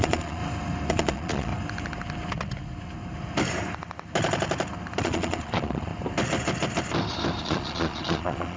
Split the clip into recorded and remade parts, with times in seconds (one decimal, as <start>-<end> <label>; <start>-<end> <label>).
0.0-0.4 remade; 0.4-0.9 recorded; 0.9-1.5 remade; 1.5-5.0 recorded; 5.0-5.9 remade; 5.9-7.4 recorded; 7.4-8.6 remade